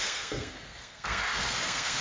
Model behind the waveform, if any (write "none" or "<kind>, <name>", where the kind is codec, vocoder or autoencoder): codec, SNAC